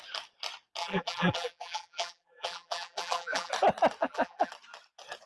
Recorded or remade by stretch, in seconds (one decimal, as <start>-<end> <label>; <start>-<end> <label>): 0.0-0.8 recorded; 0.8-3.5 remade; 3.5-4.0 recorded; 4.0-4.5 remade; 4.5-5.3 recorded